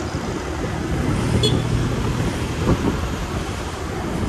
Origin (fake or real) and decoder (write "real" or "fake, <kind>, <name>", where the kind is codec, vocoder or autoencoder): real